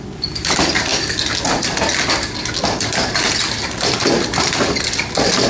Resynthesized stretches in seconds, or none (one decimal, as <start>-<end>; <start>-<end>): none